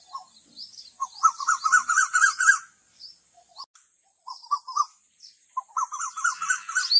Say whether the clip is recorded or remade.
recorded